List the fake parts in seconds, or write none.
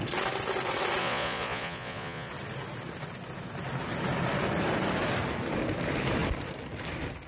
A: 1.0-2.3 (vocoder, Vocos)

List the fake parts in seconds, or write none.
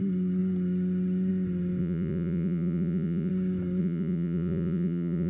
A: 1.8-3.3 (vocoder, Vocos); 3.8-5.3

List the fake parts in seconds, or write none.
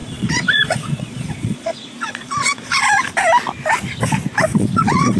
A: 0.0-3.1 (vocoder, Vocos); 4.5-5.2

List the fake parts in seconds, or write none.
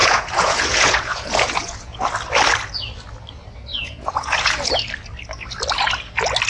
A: 0.0-2.0 (vocoder, Vocos); 3.7-4.7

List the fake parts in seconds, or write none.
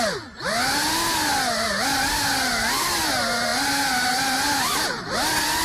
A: none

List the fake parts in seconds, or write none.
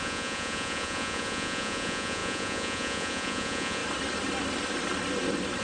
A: 0.0-3.8 (vocoder, Vocos)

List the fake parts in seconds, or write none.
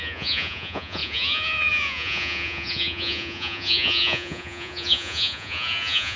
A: 0.0-6.2 (vocoder, Vocos)